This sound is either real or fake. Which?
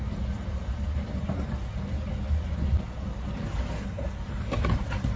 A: real